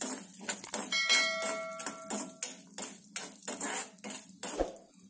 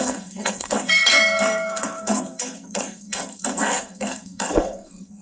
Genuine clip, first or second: first